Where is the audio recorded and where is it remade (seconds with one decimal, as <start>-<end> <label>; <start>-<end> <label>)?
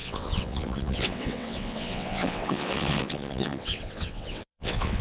0.0-5.0 remade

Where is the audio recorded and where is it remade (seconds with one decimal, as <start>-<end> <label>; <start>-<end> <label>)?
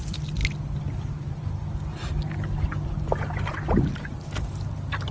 0.0-5.1 recorded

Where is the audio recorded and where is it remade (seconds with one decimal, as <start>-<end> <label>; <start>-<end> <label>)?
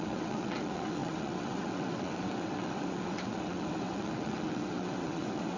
0.0-5.6 remade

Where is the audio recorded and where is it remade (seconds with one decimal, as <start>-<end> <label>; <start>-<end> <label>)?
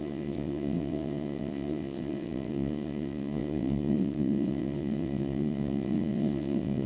0.0-6.9 remade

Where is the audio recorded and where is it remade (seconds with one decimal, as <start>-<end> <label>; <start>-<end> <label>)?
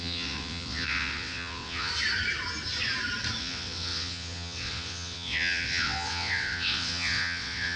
0.0-1.9 remade; 1.9-3.4 recorded; 3.4-7.8 remade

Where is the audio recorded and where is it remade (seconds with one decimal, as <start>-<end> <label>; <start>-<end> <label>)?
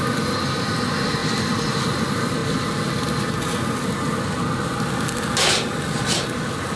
0.0-6.8 recorded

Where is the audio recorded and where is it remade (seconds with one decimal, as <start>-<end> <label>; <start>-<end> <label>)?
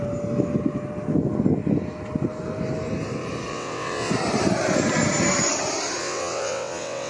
0.0-3.5 recorded; 3.5-4.1 remade; 4.1-6.0 recorded; 6.0-7.1 remade